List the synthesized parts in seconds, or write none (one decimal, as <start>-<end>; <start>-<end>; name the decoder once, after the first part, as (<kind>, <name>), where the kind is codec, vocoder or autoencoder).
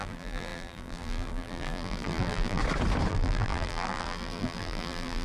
0.0-2.6 (vocoder, BigVGAN v2); 3.1-5.2